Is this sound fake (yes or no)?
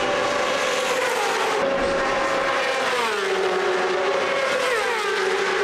no